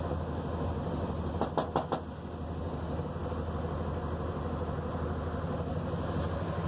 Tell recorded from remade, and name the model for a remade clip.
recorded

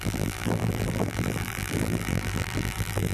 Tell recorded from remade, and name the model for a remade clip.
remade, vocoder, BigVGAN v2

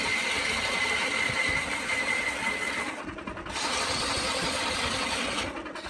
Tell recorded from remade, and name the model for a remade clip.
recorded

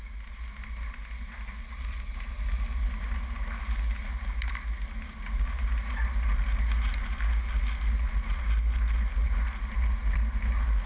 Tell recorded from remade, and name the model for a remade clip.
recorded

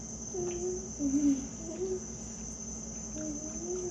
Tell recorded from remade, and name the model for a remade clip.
recorded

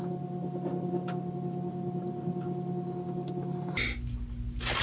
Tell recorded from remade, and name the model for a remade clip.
recorded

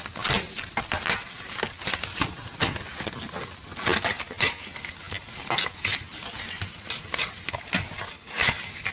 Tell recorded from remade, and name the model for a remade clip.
recorded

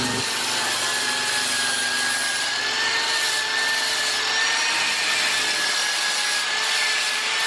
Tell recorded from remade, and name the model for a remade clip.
recorded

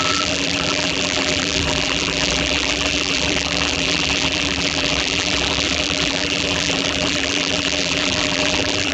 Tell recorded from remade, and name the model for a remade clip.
remade, vocoder, BigVGAN v2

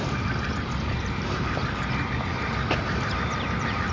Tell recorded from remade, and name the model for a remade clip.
remade, vocoder, BigVGAN v2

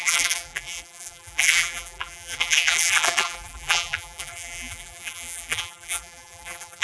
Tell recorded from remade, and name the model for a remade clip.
remade, vocoder, BigVGAN v2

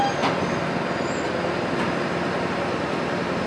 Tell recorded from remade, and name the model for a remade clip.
recorded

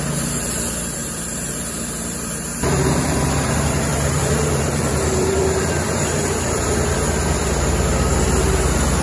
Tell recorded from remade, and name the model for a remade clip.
remade, vocoder, BigVGAN v2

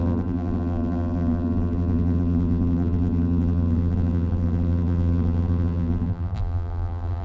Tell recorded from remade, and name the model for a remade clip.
remade, vocoder, BigVGAN v2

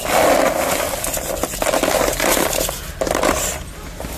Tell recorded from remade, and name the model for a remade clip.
recorded